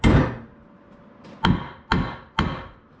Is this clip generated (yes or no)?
no